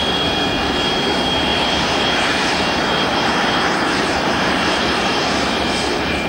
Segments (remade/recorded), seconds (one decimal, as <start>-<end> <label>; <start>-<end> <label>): 0.0-1.5 recorded; 1.5-2.6 remade; 2.6-3.1 recorded; 3.1-5.6 remade; 5.6-6.3 recorded

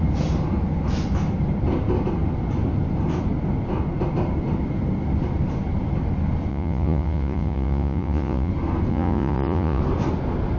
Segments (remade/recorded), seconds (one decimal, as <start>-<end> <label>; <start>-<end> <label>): 0.0-6.5 recorded; 6.5-8.5 remade; 8.5-8.9 recorded; 8.9-9.8 remade; 9.8-10.6 recorded

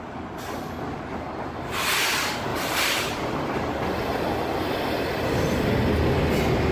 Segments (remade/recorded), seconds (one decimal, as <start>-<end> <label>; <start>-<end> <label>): 0.0-2.5 recorded; 2.5-3.8 remade; 3.8-6.7 recorded

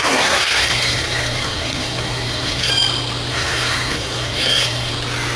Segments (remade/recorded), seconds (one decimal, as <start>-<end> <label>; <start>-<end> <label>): 0.0-2.7 remade; 2.7-3.3 recorded; 3.3-4.9 remade; 4.9-5.4 recorded

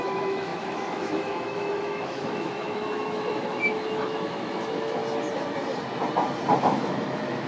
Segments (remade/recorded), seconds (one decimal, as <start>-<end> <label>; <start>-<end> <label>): 0.0-5.0 remade; 5.0-6.6 recorded; 6.6-7.5 remade

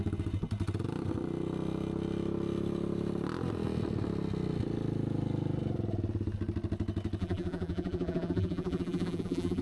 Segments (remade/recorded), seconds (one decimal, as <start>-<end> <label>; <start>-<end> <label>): 0.0-7.2 recorded; 7.2-9.6 remade